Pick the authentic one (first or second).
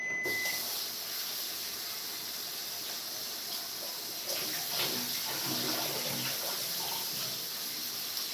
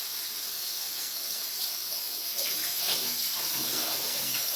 first